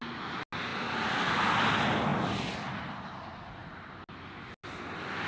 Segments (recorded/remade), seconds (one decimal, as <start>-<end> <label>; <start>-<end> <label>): 0.0-5.3 recorded